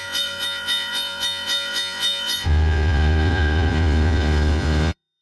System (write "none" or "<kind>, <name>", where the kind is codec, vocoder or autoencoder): vocoder, Vocos